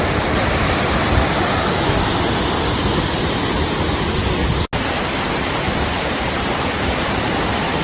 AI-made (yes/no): no